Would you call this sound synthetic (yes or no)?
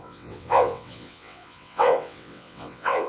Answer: yes